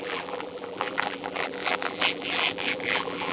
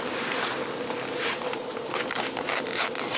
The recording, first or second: second